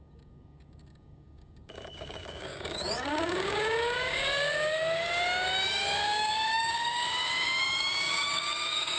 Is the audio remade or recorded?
remade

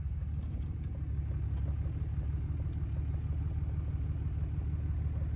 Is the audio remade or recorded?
recorded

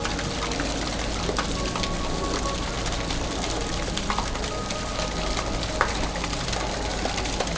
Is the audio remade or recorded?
recorded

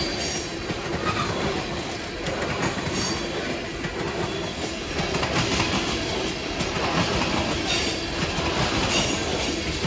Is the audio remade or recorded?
recorded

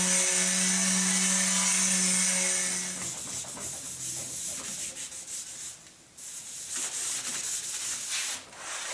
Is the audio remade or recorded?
recorded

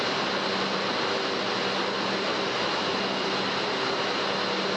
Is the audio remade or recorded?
recorded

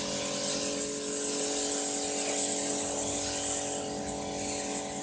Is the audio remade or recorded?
recorded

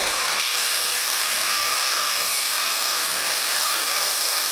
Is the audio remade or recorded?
remade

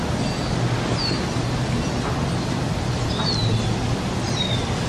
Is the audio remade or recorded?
recorded